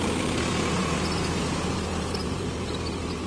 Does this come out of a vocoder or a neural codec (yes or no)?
no